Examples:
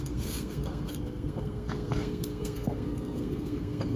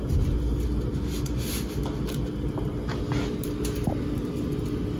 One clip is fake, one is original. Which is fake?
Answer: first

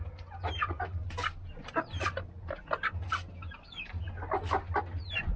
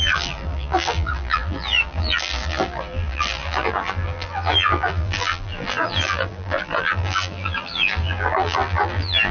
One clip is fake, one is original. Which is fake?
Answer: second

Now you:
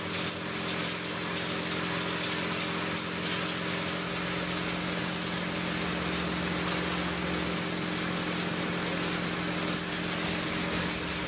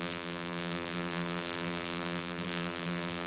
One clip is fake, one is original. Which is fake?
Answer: second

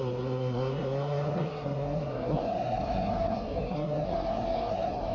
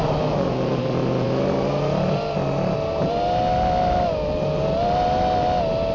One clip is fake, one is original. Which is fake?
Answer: first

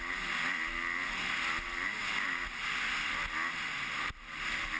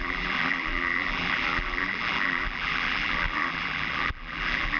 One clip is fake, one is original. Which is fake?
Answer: second